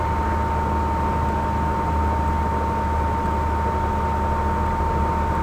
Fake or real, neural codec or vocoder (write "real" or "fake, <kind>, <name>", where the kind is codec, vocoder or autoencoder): real